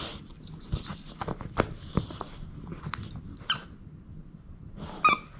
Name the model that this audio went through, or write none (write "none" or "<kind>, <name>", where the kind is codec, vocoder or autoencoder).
none